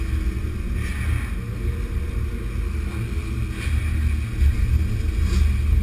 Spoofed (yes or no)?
no